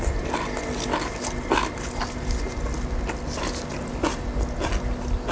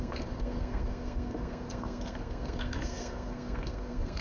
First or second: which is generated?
second